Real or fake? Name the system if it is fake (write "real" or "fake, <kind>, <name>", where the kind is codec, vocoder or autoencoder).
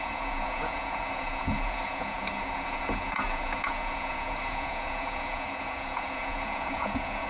fake, vocoder, Vocos